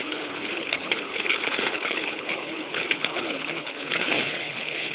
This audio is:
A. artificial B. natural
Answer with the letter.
A